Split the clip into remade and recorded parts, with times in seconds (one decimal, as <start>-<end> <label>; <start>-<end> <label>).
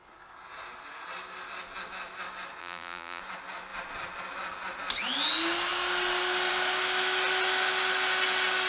0.0-2.6 recorded; 2.6-3.2 remade; 3.2-8.7 recorded